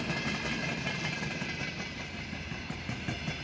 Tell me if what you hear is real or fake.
fake